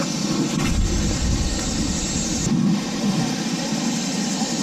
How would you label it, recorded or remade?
recorded